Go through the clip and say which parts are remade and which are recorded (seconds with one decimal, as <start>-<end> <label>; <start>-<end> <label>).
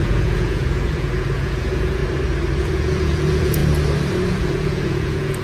0.0-2.0 remade; 2.0-2.6 recorded; 2.6-3.6 remade; 3.6-4.3 recorded; 4.3-5.4 remade